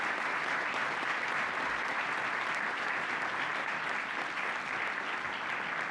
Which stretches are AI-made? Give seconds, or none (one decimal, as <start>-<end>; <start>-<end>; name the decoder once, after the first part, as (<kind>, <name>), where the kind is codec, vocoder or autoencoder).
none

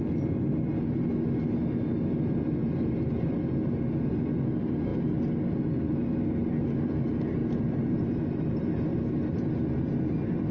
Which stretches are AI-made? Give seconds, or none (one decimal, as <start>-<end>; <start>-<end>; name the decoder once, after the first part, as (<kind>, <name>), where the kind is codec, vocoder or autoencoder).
2.6-3.4 (vocoder, BigVGAN v2); 7.4-8.6

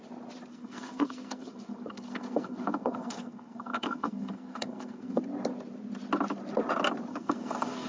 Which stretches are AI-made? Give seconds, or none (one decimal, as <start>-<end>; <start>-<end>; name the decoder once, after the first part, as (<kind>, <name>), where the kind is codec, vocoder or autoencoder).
0.5-5.2 (codec, SNAC); 7.1-7.9

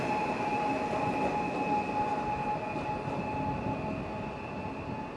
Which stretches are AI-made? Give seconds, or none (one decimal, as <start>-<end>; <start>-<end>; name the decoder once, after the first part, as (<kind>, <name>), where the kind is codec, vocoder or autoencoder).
none

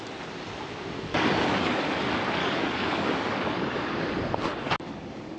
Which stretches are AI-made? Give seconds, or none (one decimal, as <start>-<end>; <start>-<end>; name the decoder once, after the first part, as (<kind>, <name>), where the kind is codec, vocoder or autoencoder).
1.1-1.8 (codec, DAC); 2.4-4.0; 4.5-5.4

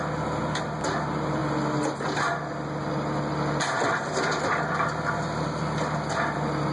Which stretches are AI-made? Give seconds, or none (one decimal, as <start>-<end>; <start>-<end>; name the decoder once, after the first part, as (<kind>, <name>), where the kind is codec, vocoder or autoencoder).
none

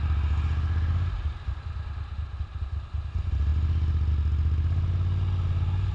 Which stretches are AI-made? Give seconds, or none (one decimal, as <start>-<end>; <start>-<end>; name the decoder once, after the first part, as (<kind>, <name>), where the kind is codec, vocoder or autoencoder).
none

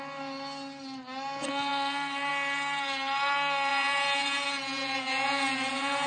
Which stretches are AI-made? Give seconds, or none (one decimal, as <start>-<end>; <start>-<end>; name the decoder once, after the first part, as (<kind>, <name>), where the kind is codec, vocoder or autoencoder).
3.7-6.1 (vocoder, Vocos)